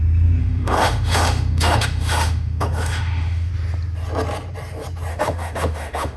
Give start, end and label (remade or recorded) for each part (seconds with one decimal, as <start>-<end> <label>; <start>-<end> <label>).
0.0-0.4 recorded; 0.4-3.5 remade; 3.5-5.1 recorded; 5.1-6.2 remade